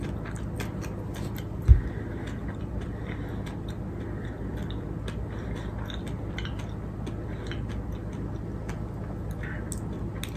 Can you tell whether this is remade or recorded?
recorded